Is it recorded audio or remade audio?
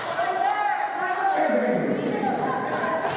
recorded